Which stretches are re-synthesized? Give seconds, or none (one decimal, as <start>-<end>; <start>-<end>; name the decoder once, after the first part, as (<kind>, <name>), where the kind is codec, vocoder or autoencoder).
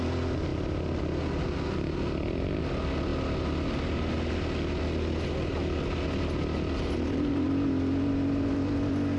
none